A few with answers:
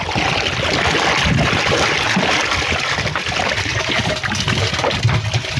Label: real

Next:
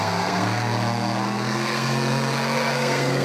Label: fake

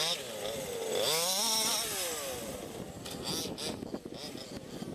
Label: real